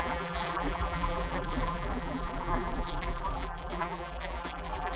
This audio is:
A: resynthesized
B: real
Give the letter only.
A